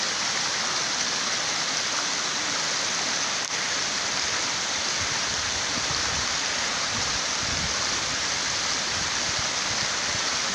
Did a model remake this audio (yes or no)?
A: no